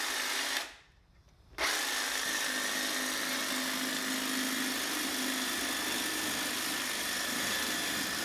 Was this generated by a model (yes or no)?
no